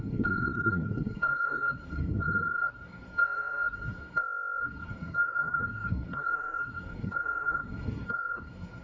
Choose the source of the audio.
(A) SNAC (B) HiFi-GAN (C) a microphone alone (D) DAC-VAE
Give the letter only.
A